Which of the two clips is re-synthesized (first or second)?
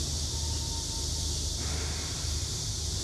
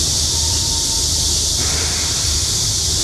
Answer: second